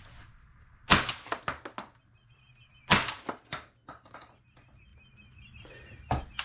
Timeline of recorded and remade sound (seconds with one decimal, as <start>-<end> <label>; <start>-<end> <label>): 0.0-6.4 recorded